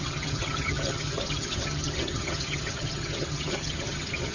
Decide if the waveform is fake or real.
fake